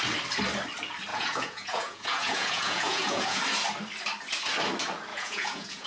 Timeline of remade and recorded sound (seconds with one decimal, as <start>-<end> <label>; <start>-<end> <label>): 0.0-1.1 recorded; 1.1-3.4 remade; 3.4-5.1 recorded; 5.1-5.9 remade